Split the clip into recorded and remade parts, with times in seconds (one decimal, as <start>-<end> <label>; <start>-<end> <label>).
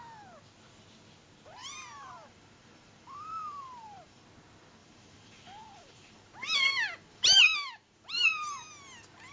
0.0-1.6 recorded; 1.6-4.2 remade; 4.2-4.8 recorded; 4.8-8.5 remade; 8.5-9.3 recorded